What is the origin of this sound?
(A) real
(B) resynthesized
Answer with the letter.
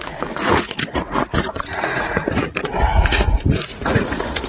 B